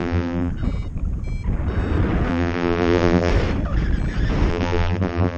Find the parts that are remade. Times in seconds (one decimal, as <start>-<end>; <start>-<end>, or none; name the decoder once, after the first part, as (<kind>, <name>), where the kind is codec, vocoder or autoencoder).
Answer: 0.0-0.5 (vocoder, BigVGAN v2); 2.3-3.3; 4.5-5.4